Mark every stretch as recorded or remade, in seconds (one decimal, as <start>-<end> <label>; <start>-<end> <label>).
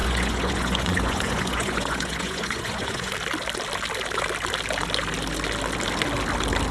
0.0-3.1 remade; 3.1-6.7 recorded